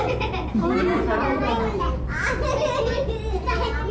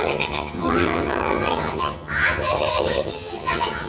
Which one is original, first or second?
first